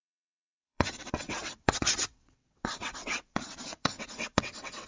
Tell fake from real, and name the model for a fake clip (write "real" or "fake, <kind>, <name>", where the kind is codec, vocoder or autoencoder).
fake, vocoder, WaveNeXt